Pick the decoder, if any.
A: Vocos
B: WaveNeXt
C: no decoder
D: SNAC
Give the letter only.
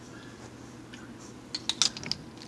C